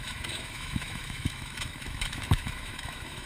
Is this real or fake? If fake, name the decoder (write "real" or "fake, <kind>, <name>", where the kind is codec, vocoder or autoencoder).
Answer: fake, autoencoder, DAC-VAE